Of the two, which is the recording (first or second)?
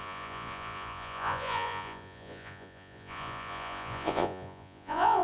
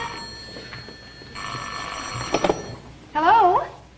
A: second